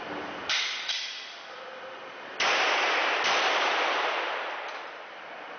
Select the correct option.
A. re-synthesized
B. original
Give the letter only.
B